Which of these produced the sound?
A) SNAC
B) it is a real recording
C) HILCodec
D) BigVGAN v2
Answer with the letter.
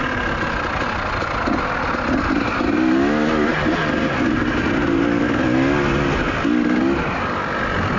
B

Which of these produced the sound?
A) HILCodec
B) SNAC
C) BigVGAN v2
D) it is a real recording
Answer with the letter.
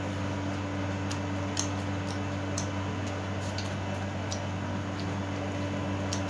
D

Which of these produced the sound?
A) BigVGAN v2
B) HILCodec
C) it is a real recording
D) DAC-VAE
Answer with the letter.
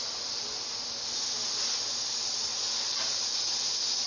C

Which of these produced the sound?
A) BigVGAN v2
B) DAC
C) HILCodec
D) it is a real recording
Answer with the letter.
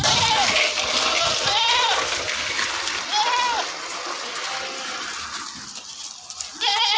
D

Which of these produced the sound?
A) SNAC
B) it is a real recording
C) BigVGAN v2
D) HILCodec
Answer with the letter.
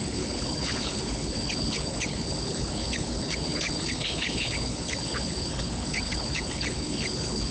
D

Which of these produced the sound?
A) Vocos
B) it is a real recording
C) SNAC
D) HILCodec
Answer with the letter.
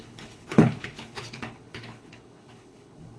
D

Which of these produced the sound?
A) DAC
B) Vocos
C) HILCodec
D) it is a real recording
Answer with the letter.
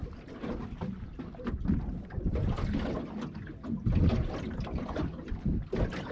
D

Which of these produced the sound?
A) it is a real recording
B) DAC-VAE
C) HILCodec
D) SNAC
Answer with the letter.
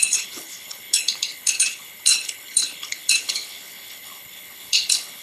C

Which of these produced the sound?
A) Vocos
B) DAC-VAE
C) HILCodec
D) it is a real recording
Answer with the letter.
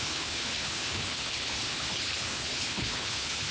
C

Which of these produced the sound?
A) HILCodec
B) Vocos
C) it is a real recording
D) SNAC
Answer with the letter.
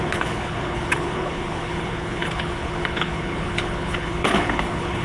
A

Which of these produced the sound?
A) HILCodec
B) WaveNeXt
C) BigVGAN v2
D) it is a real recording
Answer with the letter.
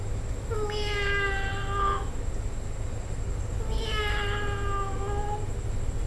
D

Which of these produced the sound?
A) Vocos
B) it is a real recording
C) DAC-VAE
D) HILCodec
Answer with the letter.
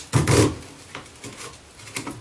B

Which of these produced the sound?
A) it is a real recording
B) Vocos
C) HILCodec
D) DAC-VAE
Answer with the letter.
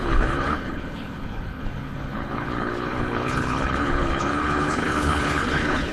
C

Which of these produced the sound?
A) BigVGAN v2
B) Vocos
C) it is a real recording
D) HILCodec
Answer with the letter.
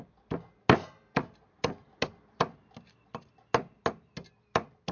C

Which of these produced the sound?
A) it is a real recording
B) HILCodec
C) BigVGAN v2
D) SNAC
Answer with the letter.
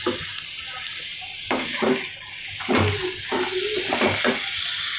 A